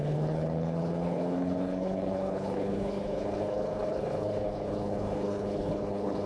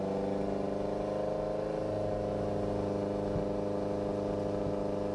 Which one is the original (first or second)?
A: second